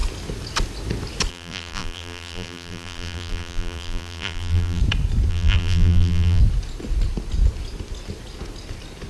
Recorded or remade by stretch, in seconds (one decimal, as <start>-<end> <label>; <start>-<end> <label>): 0.0-1.3 recorded; 1.3-4.8 remade; 4.8-5.3 recorded; 5.3-6.4 remade; 6.4-9.1 recorded